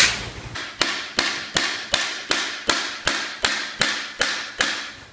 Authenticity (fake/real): real